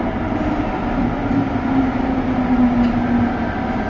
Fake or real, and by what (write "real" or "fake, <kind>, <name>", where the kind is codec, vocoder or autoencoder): real